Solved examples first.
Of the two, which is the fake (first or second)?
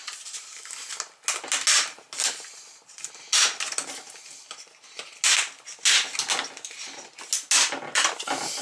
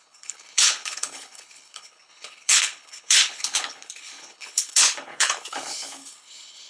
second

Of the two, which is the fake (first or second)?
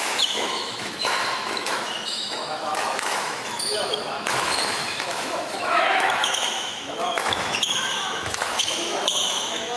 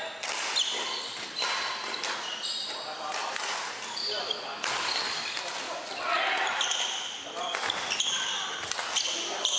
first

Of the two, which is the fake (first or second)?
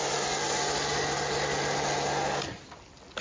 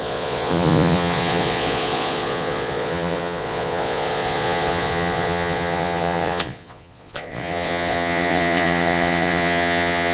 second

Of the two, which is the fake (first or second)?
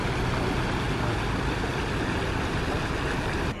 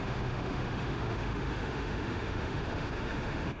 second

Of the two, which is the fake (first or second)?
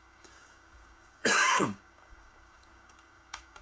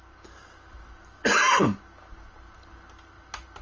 first